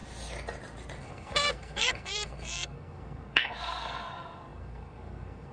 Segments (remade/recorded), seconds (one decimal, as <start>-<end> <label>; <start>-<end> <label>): 0.0-1.0 recorded; 1.0-5.5 remade